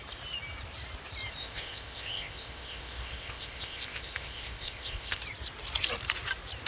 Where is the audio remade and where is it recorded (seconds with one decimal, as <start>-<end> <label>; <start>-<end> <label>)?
0.0-1.4 recorded; 1.4-5.2 remade; 5.2-6.7 recorded